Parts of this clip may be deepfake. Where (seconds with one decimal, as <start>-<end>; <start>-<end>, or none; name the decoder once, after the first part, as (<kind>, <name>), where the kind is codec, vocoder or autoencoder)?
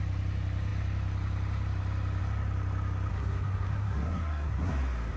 3.1-4.7 (codec, SNAC)